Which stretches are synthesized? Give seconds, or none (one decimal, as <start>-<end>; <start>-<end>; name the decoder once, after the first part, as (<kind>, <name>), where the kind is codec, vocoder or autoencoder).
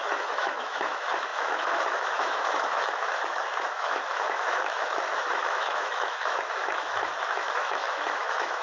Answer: 0.0-8.6 (autoencoder, DAC-VAE)